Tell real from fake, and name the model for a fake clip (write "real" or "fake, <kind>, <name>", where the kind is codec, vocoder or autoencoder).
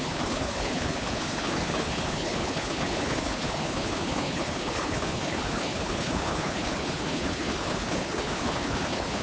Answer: fake, codec, HILCodec